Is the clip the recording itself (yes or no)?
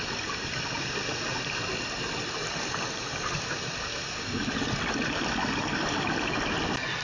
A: yes